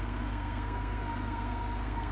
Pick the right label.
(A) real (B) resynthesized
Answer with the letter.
B